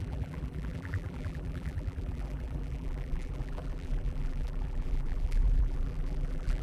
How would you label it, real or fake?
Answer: fake